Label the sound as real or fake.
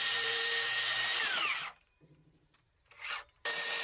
fake